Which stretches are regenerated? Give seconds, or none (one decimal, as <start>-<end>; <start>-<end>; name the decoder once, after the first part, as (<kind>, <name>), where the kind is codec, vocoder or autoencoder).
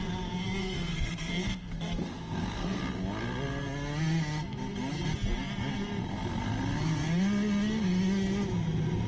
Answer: 0.6-2.8 (codec, SNAC)